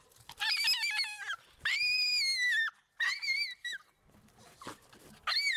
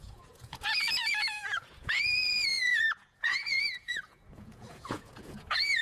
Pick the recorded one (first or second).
first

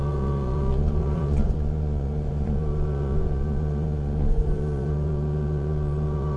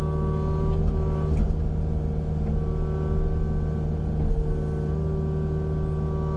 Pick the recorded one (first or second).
second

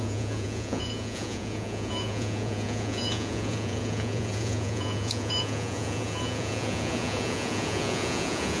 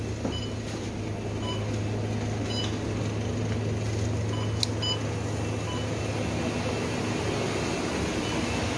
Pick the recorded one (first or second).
second